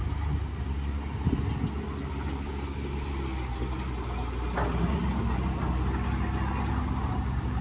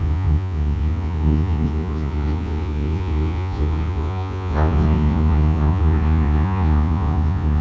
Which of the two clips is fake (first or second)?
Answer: second